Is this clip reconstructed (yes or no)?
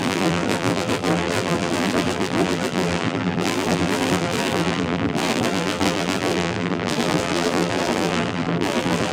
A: yes